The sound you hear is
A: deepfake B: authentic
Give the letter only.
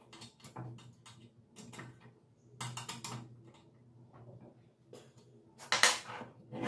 B